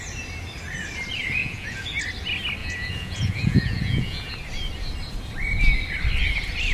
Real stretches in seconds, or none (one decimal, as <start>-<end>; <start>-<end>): 0.0-1.4; 2.0-2.6; 4.3-6.7